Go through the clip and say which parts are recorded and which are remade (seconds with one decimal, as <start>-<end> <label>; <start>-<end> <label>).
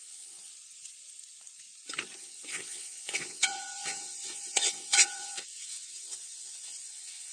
0.0-0.5 remade; 0.5-2.2 recorded; 2.2-7.3 remade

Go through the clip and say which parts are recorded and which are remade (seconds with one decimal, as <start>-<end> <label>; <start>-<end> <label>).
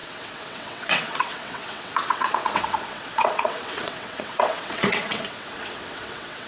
0.0-6.5 remade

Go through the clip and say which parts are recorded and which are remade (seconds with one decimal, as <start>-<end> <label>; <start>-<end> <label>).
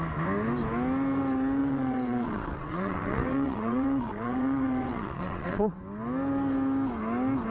0.0-1.6 recorded; 1.6-5.8 remade; 5.8-7.5 recorded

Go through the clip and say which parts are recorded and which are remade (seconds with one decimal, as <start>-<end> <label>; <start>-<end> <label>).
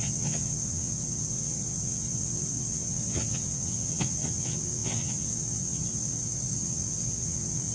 0.0-7.7 remade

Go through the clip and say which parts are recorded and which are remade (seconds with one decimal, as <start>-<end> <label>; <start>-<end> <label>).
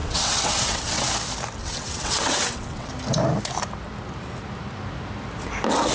0.0-1.1 remade; 1.1-1.6 recorded; 1.6-2.9 remade; 2.9-5.9 recorded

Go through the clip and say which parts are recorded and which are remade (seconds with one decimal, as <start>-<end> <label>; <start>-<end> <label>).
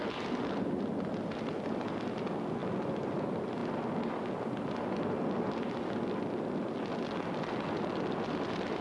0.0-8.8 recorded